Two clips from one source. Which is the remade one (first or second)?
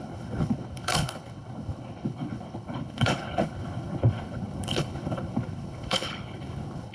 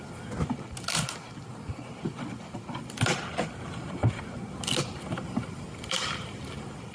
first